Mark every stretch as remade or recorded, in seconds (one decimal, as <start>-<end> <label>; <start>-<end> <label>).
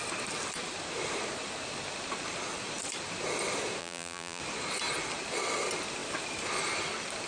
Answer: 0.0-3.8 recorded; 3.8-4.4 remade; 4.4-7.3 recorded